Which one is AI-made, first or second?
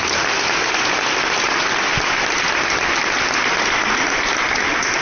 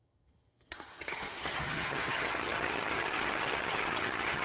second